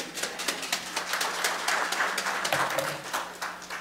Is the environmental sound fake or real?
real